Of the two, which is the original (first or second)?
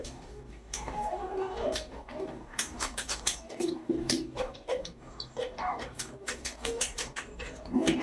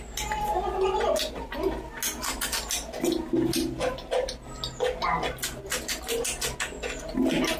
second